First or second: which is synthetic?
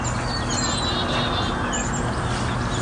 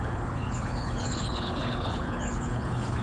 second